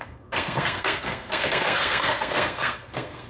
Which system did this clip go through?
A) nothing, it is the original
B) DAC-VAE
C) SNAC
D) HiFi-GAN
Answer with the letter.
C